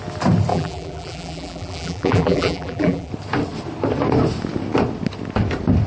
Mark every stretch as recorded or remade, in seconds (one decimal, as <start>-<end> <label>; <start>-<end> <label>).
0.0-0.5 recorded; 0.5-3.1 remade; 3.1-5.9 recorded